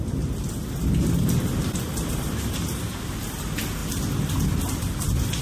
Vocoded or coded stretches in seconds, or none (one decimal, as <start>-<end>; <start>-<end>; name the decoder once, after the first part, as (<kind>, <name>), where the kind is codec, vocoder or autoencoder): 1.9-3.1 (vocoder, BigVGAN v2)